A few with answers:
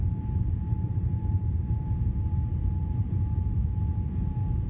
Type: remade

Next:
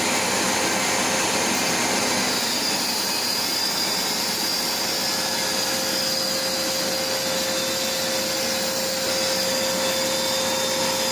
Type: recorded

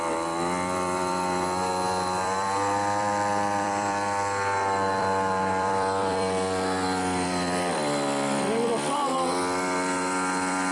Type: remade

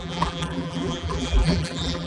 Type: remade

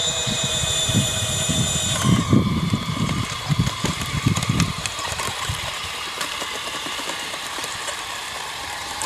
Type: remade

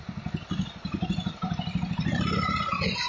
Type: recorded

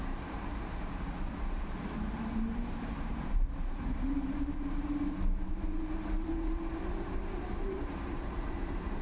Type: remade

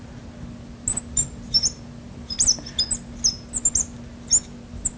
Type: recorded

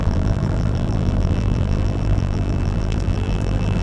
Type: remade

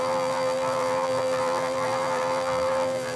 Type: remade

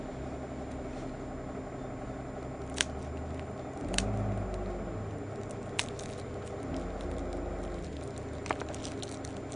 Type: recorded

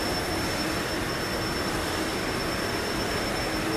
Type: recorded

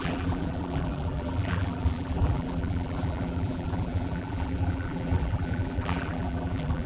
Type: remade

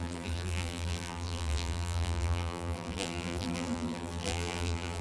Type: remade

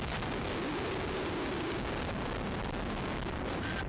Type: recorded